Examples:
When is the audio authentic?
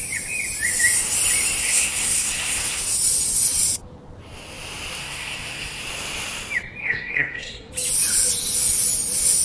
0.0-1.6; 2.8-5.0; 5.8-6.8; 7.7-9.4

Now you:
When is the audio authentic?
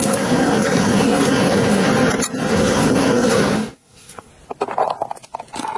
1.9-2.5; 4.3-5.8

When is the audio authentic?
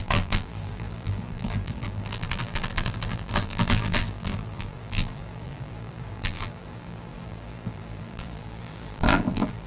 none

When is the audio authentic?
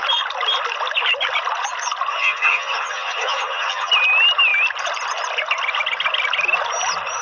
0.0-2.1; 3.9-7.2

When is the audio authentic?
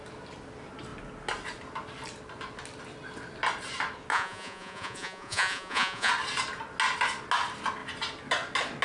0.0-4.1; 6.1-8.8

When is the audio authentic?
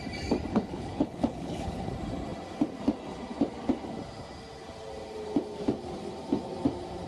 0.0-0.5; 1.9-7.1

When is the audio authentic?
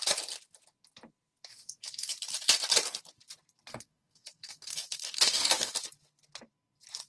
0.0-1.5; 2.1-3.7; 5.7-7.1